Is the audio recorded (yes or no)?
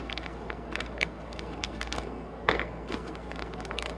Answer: no